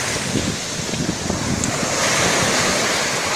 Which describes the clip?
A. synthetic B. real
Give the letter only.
B